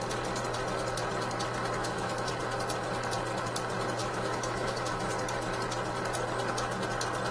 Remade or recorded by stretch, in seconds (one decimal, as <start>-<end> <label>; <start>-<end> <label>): 0.0-1.8 recorded; 1.8-2.3 remade; 2.3-4.0 recorded; 4.0-5.1 remade; 5.1-7.3 recorded